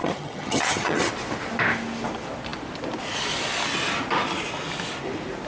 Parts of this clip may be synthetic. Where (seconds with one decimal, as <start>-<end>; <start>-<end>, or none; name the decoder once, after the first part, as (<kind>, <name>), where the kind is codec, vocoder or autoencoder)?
0.0-1.1 (vocoder, HiFi-GAN)